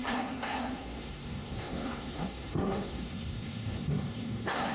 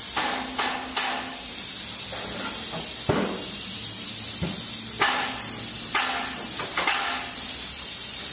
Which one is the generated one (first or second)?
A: first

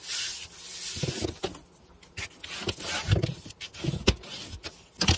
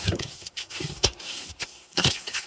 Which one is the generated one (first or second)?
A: second